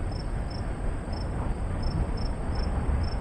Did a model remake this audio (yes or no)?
no